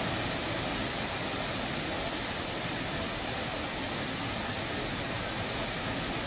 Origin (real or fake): real